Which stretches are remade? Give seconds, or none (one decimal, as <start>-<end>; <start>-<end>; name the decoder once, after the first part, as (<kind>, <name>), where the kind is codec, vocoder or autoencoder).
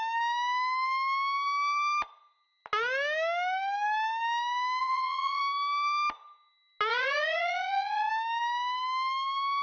4.8-5.4 (vocoder, Vocos); 6.9-8.1